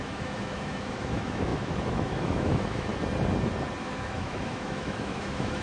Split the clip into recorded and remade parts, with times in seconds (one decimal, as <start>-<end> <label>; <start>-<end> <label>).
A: 0.0-2.9 remade; 2.9-3.8 recorded; 3.8-5.6 remade